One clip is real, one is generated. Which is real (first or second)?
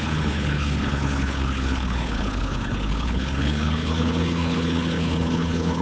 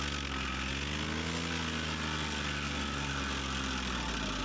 second